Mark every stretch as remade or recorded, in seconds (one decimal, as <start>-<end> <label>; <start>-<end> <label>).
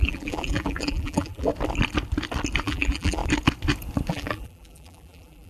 0.0-1.5 remade; 1.5-2.6 recorded; 2.6-3.2 remade; 3.2-4.1 recorded; 4.1-5.5 remade